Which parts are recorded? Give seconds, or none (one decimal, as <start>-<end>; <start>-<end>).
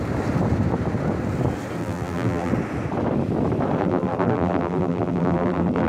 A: 0.0-1.8; 2.5-3.8